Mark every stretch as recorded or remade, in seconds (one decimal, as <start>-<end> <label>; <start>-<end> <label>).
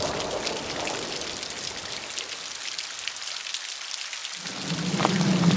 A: 0.0-5.6 recorded